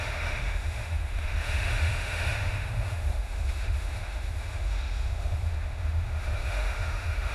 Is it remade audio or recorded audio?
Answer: remade